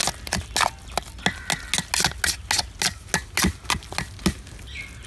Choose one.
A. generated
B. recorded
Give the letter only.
B